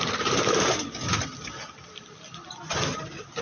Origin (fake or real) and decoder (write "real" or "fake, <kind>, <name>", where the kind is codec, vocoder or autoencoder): real